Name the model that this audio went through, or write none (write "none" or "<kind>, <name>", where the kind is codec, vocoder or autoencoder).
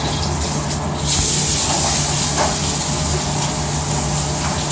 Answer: none